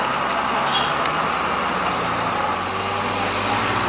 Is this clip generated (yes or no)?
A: no